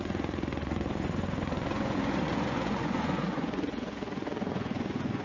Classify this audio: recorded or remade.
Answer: remade